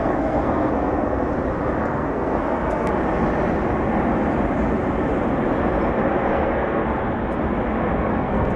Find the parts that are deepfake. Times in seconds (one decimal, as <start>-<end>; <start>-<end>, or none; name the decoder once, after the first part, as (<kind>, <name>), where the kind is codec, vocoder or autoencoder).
0.0-1.3 (codec, SNAC); 1.8-2.9; 6.1-6.8; 8.1-8.6